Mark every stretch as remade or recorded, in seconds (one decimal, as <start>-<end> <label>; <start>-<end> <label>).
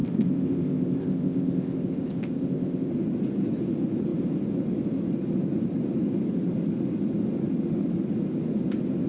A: 0.0-2.9 remade; 2.9-9.1 recorded